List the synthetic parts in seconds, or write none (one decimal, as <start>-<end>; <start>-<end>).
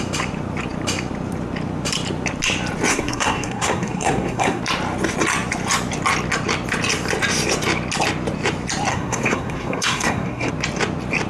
2.9-4.6; 8.9-10.5